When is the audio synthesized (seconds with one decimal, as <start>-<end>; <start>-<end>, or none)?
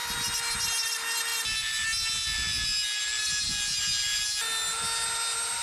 none